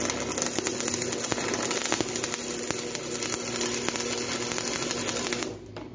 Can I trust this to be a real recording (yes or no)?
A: yes